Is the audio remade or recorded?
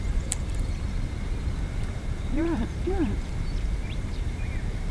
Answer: remade